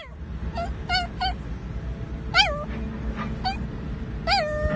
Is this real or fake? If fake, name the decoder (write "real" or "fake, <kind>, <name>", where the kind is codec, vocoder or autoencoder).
real